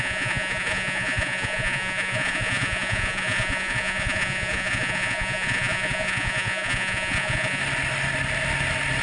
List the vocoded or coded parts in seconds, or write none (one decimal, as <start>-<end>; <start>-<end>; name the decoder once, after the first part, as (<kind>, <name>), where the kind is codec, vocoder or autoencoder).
0.0-7.6 (vocoder, Vocos)